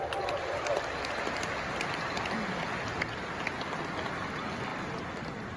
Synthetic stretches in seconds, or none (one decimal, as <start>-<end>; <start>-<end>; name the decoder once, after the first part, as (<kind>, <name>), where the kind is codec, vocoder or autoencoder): 4.7-5.6 (vocoder, BigVGAN v2)